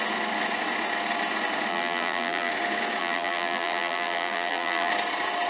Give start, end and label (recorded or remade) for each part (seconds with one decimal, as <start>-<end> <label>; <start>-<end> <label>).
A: 0.0-1.7 recorded; 1.7-2.5 remade; 2.5-3.0 recorded; 3.0-4.9 remade; 4.9-5.5 recorded